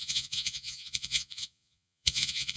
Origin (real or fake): fake